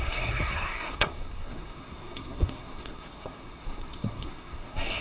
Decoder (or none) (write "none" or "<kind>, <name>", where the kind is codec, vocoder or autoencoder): codec, SNAC